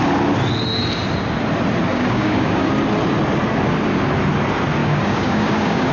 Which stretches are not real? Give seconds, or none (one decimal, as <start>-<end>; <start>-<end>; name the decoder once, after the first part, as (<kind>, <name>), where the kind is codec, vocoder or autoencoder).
1.9-2.7 (codec, DAC); 4.8-5.9

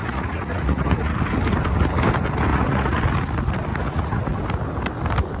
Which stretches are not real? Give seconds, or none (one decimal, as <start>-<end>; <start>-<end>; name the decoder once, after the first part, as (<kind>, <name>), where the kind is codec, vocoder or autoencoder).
0.0-1.1 (vocoder, Vocos); 2.5-3.0; 3.7-4.3

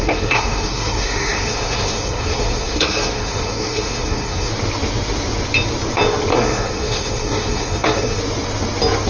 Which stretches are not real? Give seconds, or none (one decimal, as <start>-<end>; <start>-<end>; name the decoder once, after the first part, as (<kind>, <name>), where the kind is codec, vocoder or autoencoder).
0.0-4.5 (codec, SNAC); 6.3-8.2

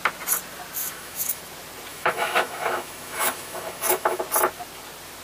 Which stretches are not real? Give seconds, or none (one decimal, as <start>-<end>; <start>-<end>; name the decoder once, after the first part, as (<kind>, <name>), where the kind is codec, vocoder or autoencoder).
0.8-1.4 (autoencoder, DAC-VAE); 1.9-4.2

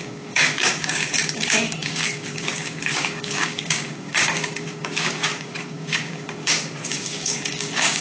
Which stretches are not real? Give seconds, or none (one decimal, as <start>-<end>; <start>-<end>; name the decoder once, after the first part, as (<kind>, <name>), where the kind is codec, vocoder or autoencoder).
0.0-8.0 (codec, DAC)